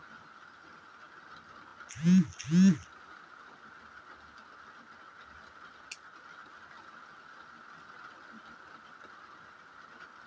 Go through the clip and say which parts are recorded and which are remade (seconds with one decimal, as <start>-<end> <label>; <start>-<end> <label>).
0.0-10.3 recorded